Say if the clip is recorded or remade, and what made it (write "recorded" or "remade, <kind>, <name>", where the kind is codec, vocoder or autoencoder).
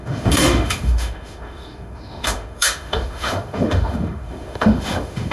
remade, autoencoder, DAC-VAE